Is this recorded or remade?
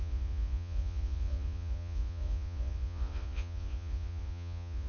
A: remade